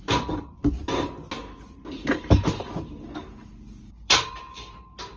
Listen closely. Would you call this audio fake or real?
real